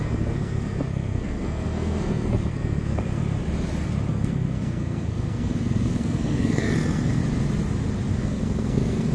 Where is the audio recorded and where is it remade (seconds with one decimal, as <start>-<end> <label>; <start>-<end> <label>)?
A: 0.0-3.2 remade; 3.2-4.1 recorded; 4.1-7.2 remade; 7.2-8.1 recorded; 8.1-9.1 remade